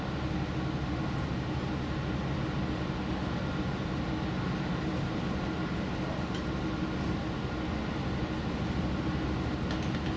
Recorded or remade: recorded